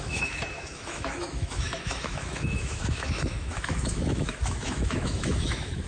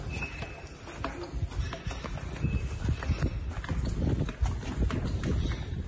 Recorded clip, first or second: second